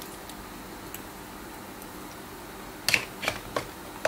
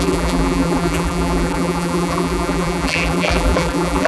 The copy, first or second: second